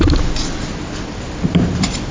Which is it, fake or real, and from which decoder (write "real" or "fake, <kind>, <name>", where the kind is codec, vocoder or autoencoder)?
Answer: real